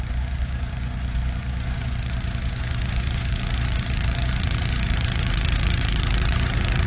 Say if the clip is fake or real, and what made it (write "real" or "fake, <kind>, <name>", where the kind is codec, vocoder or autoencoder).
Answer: fake, vocoder, Vocos